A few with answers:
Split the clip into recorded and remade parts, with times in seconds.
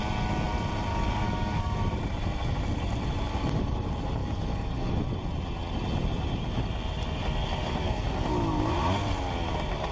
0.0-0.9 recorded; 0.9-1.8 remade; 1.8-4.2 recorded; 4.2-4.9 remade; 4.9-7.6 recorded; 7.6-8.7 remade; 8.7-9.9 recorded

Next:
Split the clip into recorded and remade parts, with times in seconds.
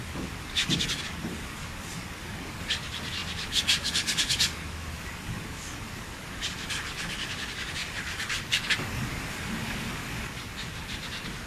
0.0-11.5 remade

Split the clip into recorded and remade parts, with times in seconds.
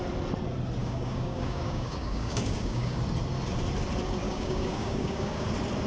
0.0-0.8 recorded; 0.8-3.0 remade; 3.0-4.2 recorded; 4.2-5.5 remade; 5.5-5.9 recorded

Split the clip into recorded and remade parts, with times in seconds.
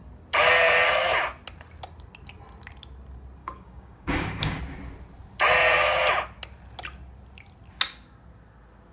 0.0-3.4 recorded; 3.4-4.6 remade; 4.6-8.9 recorded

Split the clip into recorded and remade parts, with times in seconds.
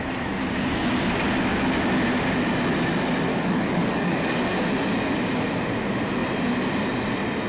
0.0-3.3 recorded; 3.3-4.5 remade; 4.5-7.5 recorded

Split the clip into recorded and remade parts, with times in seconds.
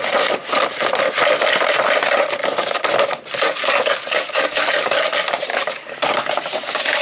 0.0-3.6 recorded; 3.6-5.0 remade; 5.0-5.5 recorded; 5.5-6.4 remade; 6.4-7.0 recorded